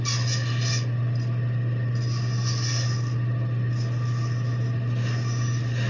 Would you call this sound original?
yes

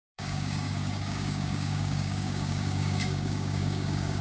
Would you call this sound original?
no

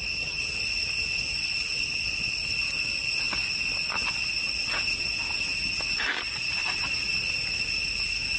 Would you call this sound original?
yes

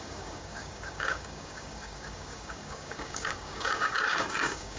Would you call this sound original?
no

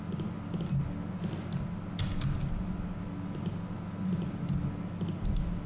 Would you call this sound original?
yes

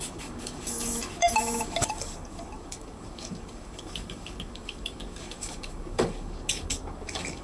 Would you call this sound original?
no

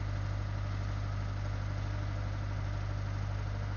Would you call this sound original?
yes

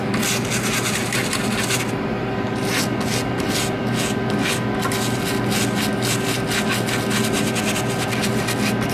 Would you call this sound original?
yes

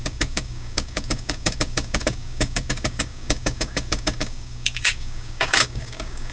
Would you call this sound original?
no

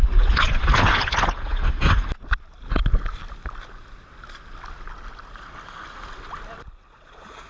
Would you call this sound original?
yes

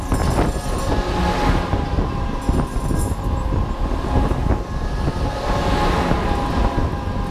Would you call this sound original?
yes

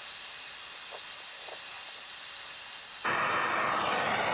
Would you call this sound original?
yes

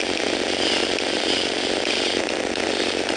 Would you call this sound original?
yes